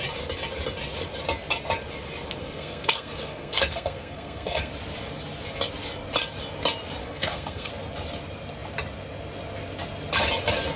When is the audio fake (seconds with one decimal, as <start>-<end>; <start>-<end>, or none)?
2.4-4.7; 7.0-7.7